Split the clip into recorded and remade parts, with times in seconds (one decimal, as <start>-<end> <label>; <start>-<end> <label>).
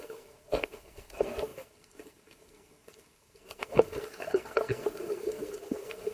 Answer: 0.0-6.1 remade